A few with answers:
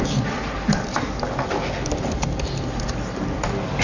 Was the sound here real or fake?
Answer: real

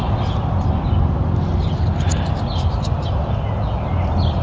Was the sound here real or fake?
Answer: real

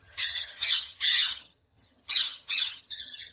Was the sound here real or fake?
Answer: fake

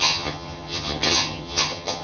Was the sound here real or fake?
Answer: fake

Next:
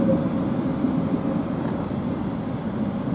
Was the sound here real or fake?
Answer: real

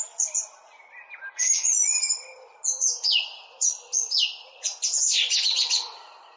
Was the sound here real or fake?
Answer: real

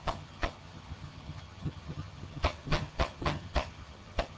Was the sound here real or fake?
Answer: fake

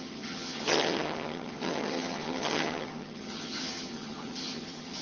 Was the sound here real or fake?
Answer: fake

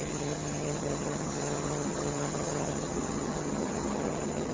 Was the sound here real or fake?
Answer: fake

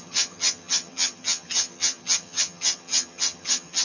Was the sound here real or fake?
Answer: fake